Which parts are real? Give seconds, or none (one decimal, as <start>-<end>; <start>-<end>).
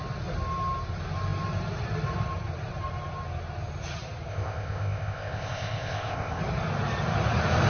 0.0-4.3; 6.4-7.7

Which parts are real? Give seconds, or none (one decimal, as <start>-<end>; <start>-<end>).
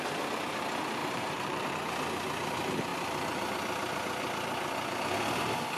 0.0-1.0; 1.7-5.8